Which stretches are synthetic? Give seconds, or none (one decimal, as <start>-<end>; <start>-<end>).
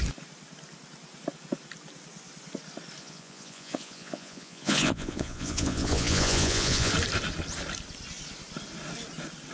3.0-6.9